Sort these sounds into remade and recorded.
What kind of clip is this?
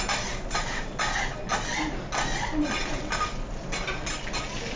recorded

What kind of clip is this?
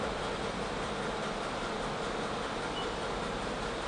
recorded